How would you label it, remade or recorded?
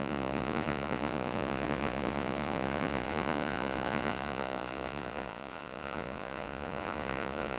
remade